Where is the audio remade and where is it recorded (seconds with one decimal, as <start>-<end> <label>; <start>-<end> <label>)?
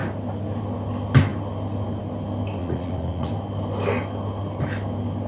0.0-2.6 recorded; 2.6-3.3 remade; 3.3-5.3 recorded